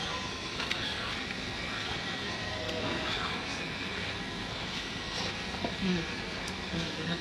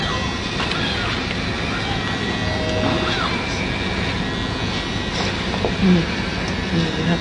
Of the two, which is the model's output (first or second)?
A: first